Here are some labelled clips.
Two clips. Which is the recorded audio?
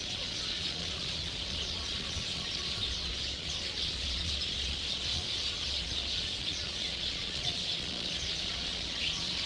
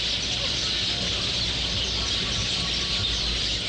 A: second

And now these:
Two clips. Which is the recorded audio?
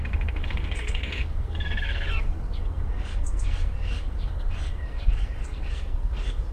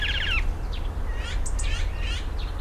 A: second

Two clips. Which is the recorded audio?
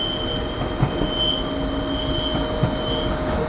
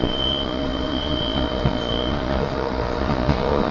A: first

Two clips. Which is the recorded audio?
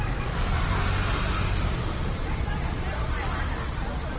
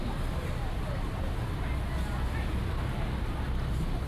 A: second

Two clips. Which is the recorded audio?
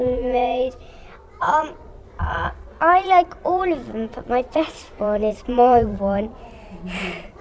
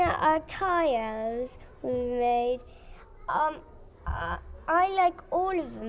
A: second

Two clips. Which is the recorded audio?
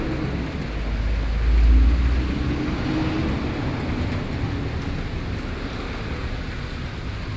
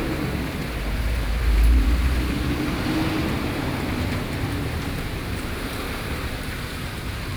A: first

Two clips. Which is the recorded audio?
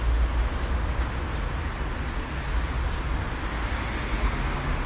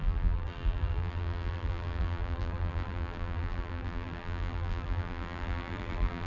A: first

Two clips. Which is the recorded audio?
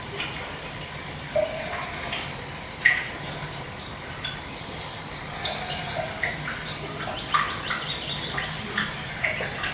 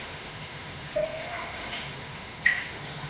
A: first